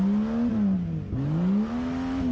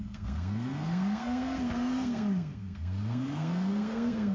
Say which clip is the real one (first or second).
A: first